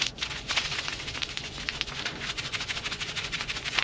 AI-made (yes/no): yes